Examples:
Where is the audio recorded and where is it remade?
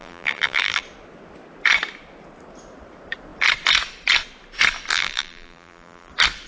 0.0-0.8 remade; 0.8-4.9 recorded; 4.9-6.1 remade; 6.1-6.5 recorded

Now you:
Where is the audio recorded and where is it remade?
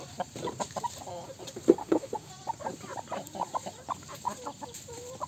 0.0-1.8 recorded; 1.8-2.3 remade; 2.3-5.3 recorded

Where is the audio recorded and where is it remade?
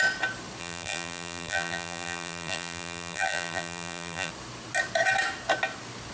0.0-0.6 recorded; 0.6-4.3 remade; 4.3-6.1 recorded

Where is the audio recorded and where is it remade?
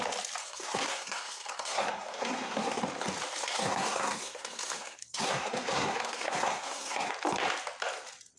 0.0-0.4 recorded; 0.4-2.8 remade; 2.8-3.4 recorded; 3.4-7.1 remade; 7.1-8.4 recorded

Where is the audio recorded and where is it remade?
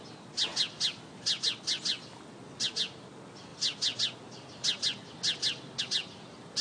0.0-6.6 recorded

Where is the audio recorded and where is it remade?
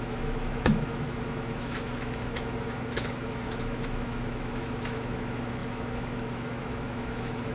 0.0-7.5 remade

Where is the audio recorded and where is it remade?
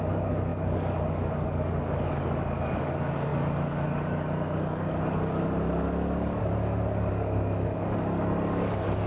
0.0-9.1 remade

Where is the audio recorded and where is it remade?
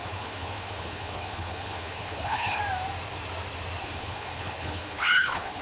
0.0-2.6 remade; 2.6-3.8 recorded; 3.8-5.6 remade